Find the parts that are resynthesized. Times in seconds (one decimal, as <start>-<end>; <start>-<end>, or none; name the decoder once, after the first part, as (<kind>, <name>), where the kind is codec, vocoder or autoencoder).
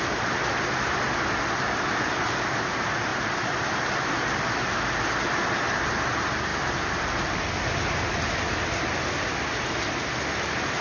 3.1-4.8 (vocoder, BigVGAN v2); 6.5-7.3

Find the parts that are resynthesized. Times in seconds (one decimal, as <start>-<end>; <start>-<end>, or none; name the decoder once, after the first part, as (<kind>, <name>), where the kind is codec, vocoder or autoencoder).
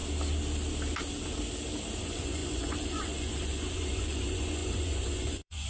2.0-5.7 (vocoder, Vocos)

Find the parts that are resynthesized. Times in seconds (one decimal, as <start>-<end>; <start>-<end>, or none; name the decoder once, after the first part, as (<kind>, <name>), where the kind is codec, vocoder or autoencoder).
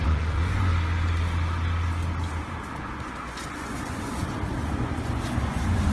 0.0-0.7 (vocoder, Vocos); 2.8-5.9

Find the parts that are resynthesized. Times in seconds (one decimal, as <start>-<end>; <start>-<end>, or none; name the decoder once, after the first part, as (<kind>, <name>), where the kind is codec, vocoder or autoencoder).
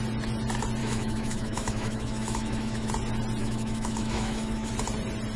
0.8-2.9 (autoencoder, DAC-VAE); 3.4-4.7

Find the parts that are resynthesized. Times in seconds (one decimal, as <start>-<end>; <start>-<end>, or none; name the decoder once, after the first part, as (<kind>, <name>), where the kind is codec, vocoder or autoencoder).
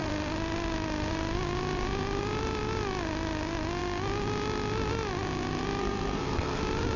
5.8-6.6 (codec, SNAC)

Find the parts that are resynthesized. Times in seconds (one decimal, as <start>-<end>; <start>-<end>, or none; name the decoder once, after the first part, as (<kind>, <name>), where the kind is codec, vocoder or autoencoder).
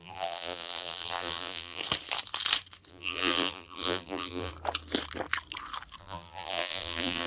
0.0-1.8 (vocoder, BigVGAN v2); 2.9-4.5; 6.0-7.3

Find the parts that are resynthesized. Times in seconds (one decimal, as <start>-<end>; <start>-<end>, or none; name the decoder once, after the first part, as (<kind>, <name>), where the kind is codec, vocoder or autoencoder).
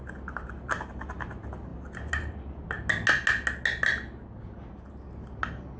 none